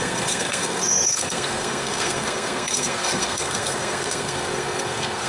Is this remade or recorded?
remade